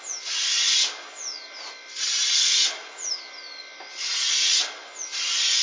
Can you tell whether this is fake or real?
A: real